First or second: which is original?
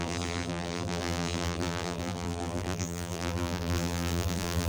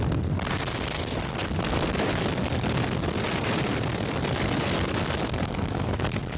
second